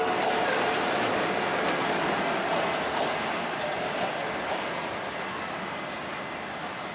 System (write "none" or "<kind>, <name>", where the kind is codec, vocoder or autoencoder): none